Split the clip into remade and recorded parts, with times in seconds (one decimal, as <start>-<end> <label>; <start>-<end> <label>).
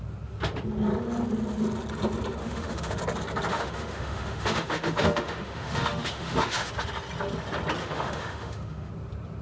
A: 0.0-2.4 recorded; 2.4-3.0 remade; 3.0-3.5 recorded; 3.5-6.7 remade; 6.7-7.8 recorded; 7.8-8.9 remade; 8.9-9.4 recorded